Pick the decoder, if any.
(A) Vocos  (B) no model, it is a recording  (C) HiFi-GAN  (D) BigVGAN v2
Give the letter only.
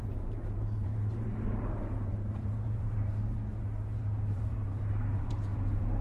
D